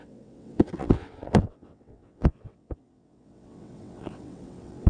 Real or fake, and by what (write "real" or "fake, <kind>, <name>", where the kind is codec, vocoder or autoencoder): fake, vocoder, WaveNeXt